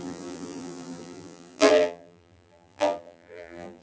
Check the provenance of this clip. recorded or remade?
remade